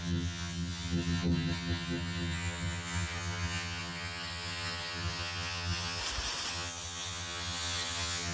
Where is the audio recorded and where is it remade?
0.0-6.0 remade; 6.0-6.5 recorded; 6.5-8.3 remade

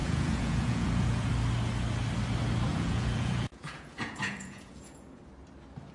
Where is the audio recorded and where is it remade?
0.0-1.3 remade; 1.3-2.7 recorded; 2.7-5.2 remade; 5.2-5.9 recorded

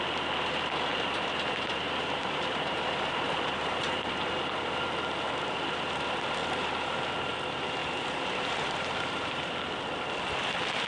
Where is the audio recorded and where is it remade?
0.0-0.9 recorded; 0.9-4.3 remade; 4.3-6.4 recorded; 6.4-7.1 remade; 7.1-7.8 recorded; 7.8-9.4 remade; 9.4-10.9 recorded